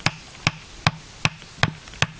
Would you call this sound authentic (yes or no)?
yes